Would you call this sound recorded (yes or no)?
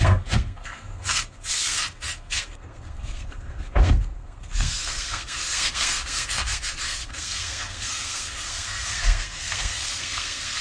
no